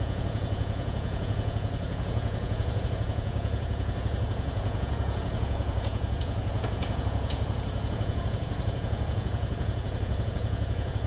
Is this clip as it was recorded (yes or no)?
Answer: no